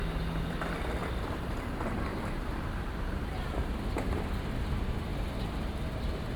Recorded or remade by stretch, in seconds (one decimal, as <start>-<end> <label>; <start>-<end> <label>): 0.0-1.0 recorded; 1.0-3.7 remade; 3.7-5.1 recorded; 5.1-5.7 remade; 5.7-6.4 recorded